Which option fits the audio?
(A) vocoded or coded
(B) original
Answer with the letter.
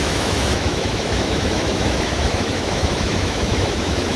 A